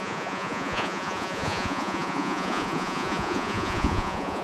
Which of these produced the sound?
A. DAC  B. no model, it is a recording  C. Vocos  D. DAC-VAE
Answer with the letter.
C